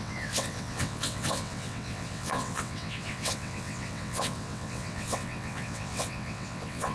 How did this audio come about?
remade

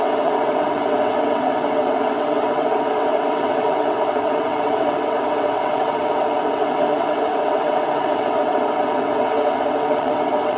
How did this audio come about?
remade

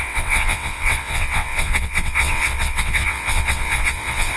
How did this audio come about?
remade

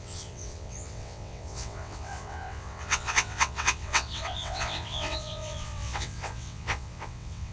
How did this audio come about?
remade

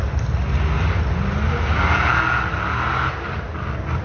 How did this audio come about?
recorded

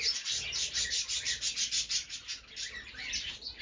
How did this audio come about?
recorded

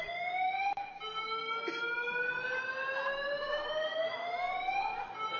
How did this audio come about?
recorded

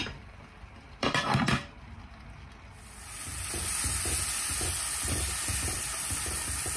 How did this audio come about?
recorded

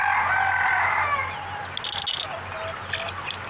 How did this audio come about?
recorded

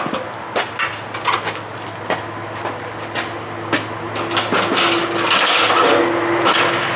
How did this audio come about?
recorded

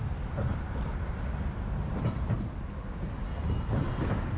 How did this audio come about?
recorded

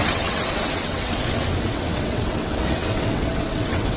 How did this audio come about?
remade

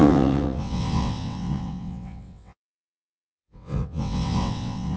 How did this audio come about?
remade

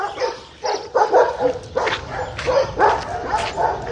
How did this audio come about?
recorded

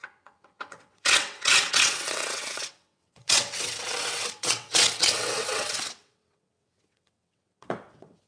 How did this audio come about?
remade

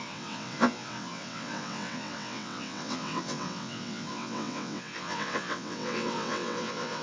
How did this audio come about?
remade